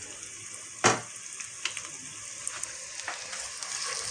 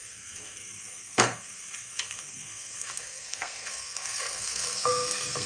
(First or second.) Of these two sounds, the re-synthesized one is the second